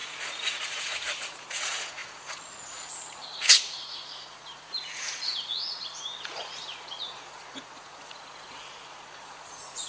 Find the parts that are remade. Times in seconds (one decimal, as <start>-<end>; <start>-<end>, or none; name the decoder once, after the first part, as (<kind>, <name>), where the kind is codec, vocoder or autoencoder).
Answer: 0.0-9.9 (vocoder, Vocos)

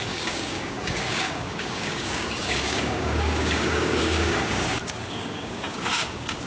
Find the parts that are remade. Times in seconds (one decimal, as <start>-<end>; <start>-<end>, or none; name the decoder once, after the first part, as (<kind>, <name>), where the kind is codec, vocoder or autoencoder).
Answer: 0.0-6.5 (codec, DAC)

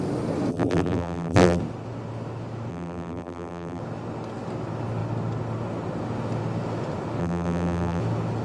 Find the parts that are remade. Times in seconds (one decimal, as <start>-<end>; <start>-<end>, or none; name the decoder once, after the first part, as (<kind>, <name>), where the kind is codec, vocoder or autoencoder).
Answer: 0.5-1.6 (vocoder, BigVGAN v2); 2.7-3.8; 7.2-8.0